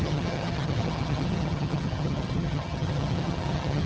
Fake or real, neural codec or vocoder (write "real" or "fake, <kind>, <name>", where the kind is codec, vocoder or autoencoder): fake, vocoder, HiFi-GAN